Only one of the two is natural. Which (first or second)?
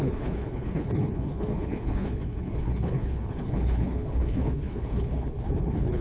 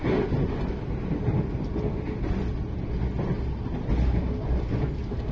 second